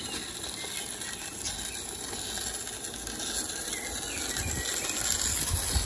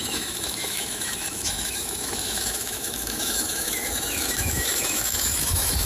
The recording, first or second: first